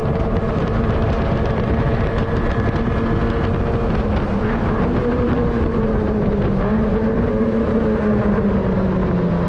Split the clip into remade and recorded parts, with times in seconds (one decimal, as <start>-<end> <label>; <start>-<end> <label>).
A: 0.0-2.9 remade; 2.9-4.3 recorded; 4.3-6.3 remade; 6.3-6.9 recorded; 6.9-7.8 remade; 7.8-9.5 recorded